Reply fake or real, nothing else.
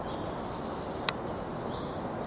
real